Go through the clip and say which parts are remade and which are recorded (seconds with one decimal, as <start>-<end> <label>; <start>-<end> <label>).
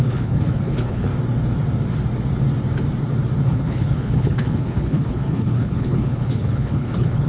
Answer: 0.0-1.1 remade; 1.1-3.4 recorded; 3.4-7.3 remade